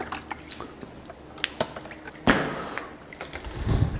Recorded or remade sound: recorded